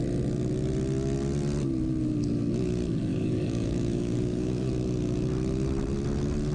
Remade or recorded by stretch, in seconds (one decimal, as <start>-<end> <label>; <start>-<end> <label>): 0.0-3.1 recorded; 3.1-4.7 remade; 4.7-6.5 recorded